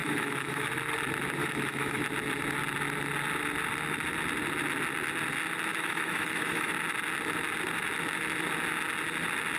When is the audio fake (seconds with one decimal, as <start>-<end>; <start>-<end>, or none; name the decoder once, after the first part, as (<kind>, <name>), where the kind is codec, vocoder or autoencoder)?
0.0-0.7 (autoencoder, DAC-VAE); 1.4-2.0; 5.7-6.7

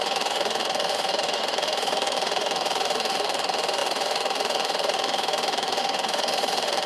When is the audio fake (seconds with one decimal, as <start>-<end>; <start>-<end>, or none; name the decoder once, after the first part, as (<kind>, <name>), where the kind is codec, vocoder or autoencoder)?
0.0-6.9 (autoencoder, DAC-VAE)

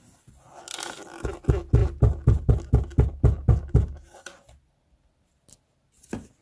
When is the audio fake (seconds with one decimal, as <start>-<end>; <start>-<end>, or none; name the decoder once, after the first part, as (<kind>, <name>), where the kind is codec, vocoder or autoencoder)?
none

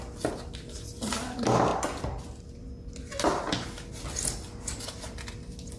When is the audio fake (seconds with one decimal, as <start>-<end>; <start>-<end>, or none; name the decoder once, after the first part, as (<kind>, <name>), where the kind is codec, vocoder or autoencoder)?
none

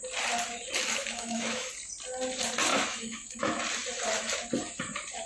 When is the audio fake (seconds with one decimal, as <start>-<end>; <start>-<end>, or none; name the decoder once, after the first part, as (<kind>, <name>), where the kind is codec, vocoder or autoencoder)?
1.0-1.7 (autoencoder, DAC-VAE); 2.7-3.4